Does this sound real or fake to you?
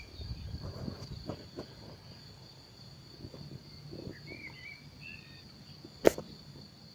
real